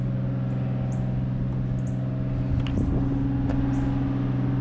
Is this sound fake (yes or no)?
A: no